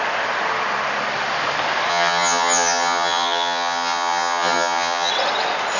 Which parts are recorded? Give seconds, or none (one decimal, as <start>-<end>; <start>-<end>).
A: 0.0-1.9; 5.1-5.8